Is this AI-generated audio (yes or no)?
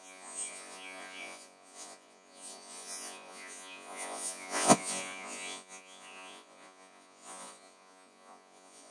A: yes